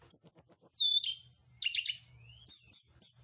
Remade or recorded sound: recorded